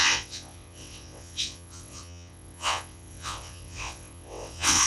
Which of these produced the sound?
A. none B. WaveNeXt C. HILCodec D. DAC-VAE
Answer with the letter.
B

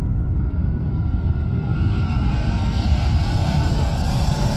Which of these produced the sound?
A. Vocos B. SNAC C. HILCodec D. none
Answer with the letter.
B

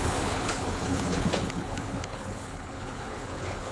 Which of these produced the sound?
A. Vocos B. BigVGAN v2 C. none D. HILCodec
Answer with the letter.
D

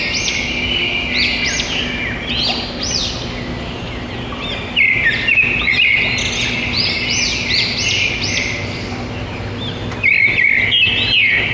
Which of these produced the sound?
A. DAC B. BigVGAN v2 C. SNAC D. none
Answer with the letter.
D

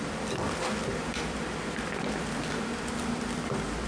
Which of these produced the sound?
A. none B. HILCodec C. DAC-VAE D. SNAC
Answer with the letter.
A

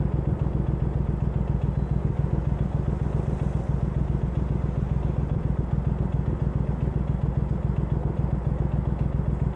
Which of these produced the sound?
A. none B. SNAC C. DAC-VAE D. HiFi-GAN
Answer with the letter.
A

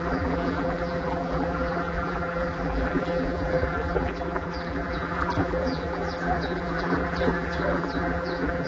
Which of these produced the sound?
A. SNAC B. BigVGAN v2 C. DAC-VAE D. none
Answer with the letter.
B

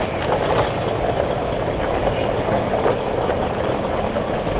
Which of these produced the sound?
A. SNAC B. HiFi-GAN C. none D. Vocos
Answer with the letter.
C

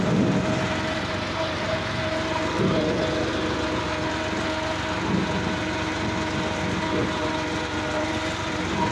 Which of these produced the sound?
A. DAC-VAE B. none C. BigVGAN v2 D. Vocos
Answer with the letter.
B